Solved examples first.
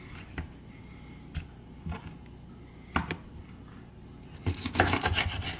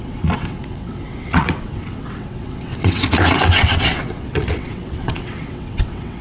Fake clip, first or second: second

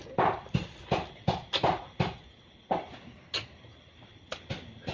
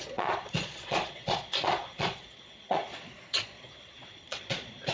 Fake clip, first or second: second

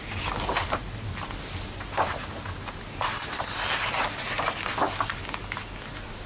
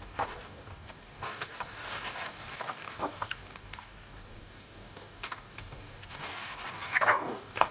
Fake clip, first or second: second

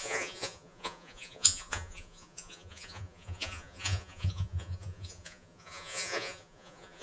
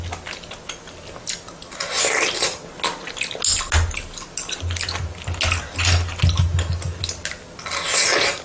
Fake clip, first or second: first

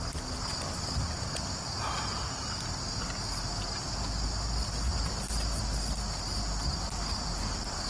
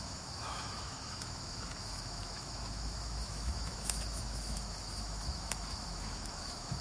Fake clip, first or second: second